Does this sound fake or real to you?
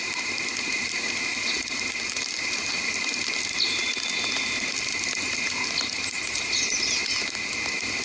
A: real